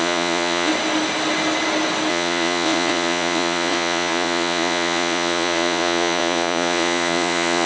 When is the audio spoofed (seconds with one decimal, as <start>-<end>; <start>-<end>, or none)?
0.0-0.7; 2.1-7.7